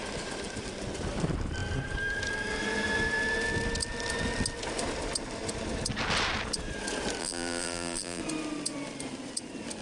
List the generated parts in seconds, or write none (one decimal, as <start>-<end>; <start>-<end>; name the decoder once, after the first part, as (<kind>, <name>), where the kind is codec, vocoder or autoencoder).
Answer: 7.2-8.2 (vocoder, BigVGAN v2)